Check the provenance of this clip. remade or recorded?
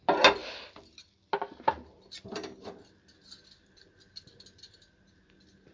recorded